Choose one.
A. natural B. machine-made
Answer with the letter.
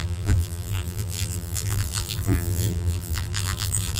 B